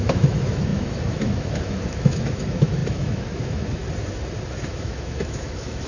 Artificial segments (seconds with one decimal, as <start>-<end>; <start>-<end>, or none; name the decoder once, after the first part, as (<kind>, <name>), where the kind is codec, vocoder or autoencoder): 0.0-3.8 (autoencoder, DAC-VAE); 4.6-5.9